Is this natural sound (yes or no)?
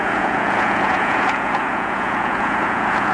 no